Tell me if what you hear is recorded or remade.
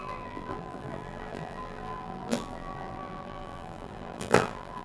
remade